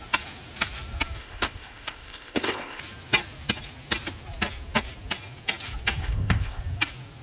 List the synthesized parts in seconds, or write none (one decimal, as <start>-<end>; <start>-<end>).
1.2-2.8; 6.0-6.6